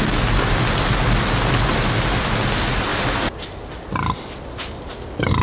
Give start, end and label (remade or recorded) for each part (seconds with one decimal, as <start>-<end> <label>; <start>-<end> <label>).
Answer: 0.0-5.4 recorded